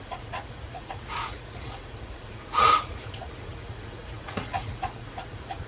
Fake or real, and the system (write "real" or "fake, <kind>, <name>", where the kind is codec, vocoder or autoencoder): fake, vocoder, Vocos